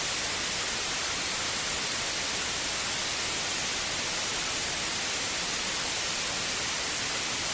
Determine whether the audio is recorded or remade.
recorded